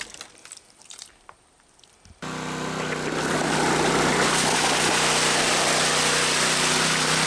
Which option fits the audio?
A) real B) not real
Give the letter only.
A